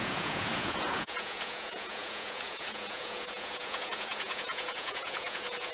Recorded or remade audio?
remade